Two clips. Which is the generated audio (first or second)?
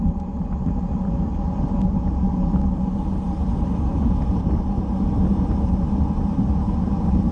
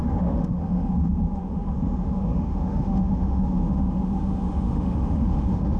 second